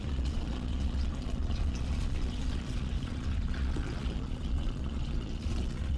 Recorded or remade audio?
remade